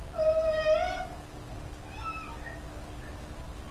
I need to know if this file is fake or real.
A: real